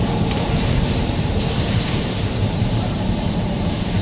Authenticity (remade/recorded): remade